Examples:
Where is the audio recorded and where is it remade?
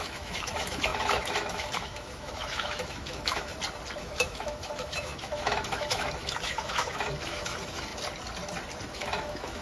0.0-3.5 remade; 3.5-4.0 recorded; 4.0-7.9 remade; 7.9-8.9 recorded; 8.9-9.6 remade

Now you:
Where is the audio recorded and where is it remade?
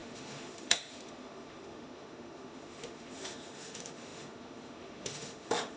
0.0-5.8 remade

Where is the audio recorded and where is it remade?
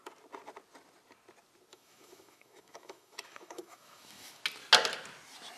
0.0-1.7 recorded; 1.7-4.4 remade; 4.4-5.6 recorded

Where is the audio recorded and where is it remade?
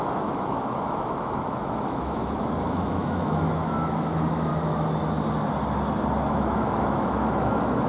0.0-4.5 remade; 4.5-6.3 recorded; 6.3-7.9 remade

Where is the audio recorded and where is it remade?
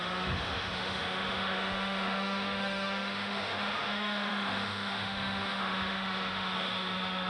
0.0-7.3 remade